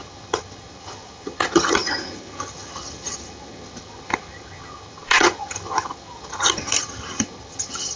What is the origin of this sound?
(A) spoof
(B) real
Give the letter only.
A